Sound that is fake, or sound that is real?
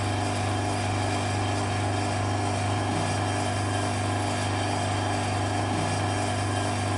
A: real